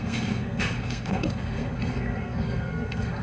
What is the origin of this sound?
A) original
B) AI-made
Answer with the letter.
B